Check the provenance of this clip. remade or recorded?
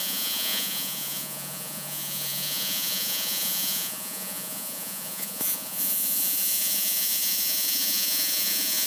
remade